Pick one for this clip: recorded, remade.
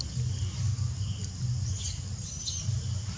recorded